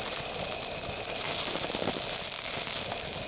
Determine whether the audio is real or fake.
real